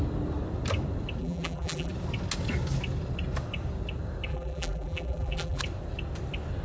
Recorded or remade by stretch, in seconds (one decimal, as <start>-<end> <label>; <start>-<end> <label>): 0.0-1.2 recorded; 1.2-1.9 remade; 1.9-4.3 recorded; 4.3-5.6 remade; 5.6-6.6 recorded